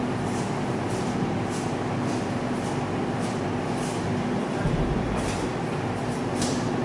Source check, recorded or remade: recorded